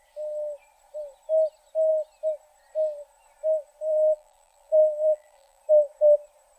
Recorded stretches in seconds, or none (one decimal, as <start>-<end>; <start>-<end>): 0.0-3.9; 5.6-6.6